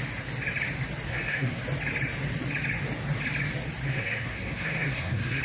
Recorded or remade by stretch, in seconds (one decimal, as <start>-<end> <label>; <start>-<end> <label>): 0.0-1.1 recorded; 1.1-1.6 remade; 1.6-3.8 recorded; 3.8-5.4 remade